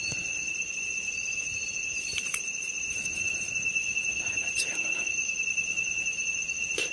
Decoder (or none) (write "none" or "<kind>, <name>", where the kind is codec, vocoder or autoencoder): none